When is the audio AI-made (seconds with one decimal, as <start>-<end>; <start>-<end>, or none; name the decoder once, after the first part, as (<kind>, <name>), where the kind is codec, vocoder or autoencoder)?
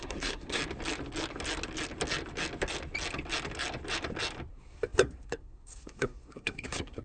0.0-0.6 (codec, SNAC); 4.5-7.0